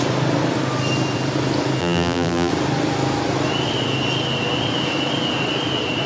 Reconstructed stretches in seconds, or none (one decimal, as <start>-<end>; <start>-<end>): 1.8-2.5